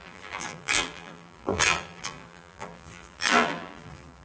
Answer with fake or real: fake